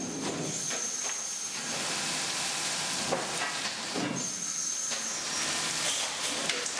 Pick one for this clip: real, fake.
real